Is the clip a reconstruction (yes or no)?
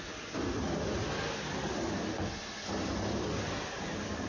no